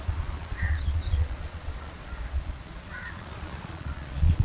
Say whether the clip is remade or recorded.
remade